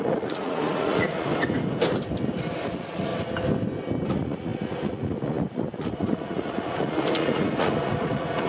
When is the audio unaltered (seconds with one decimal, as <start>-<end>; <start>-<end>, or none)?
1.3-2.7; 3.1-4.1